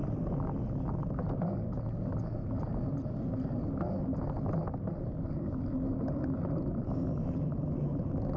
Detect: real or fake real